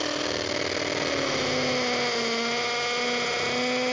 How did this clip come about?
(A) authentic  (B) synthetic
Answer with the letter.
A